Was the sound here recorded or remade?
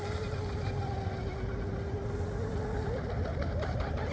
recorded